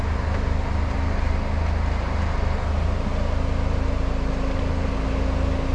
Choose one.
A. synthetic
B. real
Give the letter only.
B